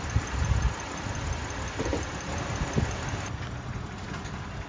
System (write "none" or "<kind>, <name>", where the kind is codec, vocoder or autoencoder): none